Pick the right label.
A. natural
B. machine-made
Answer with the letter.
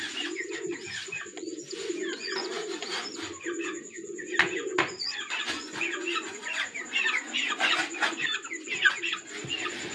B